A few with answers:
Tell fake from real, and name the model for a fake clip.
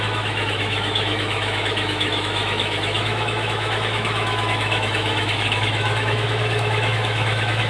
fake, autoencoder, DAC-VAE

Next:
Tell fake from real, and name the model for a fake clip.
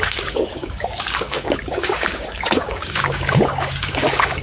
fake, codec, DAC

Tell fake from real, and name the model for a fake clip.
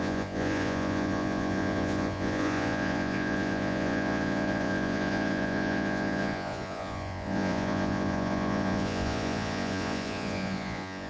fake, vocoder, Vocos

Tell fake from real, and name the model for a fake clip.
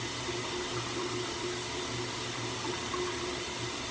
real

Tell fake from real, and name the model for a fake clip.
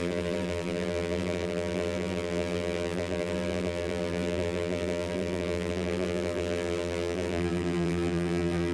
fake, vocoder, BigVGAN v2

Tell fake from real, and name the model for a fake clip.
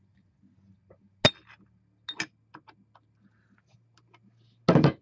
real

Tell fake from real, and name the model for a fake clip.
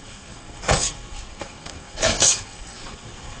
fake, codec, SNAC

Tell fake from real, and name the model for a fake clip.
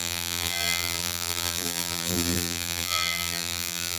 fake, vocoder, BigVGAN v2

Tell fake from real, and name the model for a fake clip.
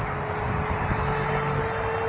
real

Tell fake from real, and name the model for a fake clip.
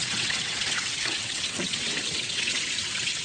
fake, vocoder, WaveNeXt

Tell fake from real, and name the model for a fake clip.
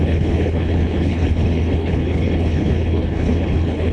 fake, codec, HILCodec